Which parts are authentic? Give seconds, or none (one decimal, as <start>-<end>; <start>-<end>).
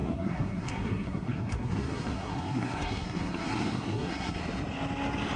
4.4-5.4